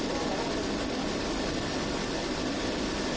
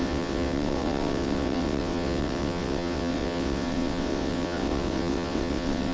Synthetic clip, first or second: second